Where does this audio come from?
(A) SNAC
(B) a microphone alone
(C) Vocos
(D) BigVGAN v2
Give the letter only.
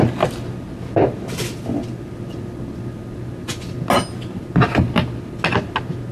B